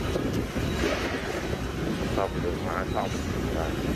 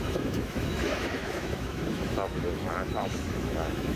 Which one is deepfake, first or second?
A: second